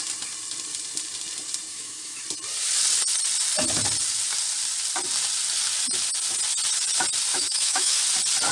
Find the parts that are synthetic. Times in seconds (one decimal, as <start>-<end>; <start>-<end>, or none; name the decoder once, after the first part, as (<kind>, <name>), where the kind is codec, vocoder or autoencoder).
1.7-2.2 (autoencoder, DAC-VAE); 7.3-8.0